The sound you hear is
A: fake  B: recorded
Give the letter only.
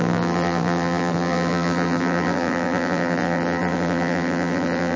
A